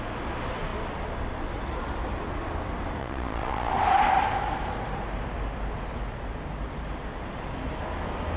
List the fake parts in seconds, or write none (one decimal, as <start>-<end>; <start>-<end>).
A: 3.0-3.7

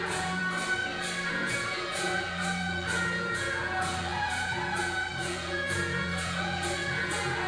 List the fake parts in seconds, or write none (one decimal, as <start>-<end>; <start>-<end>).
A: 0.0-0.4; 1.3-7.5

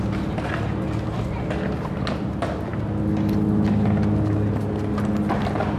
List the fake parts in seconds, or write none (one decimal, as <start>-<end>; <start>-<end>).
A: none

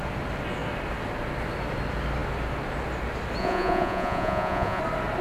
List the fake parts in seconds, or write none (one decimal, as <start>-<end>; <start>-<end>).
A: 3.4-4.8

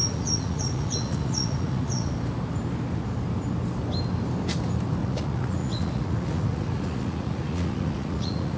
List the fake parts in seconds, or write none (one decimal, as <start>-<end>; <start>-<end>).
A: 0.0-2.1; 5.0-8.6

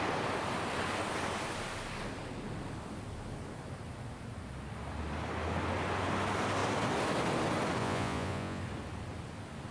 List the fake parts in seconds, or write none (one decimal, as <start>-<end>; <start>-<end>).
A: 7.8-8.6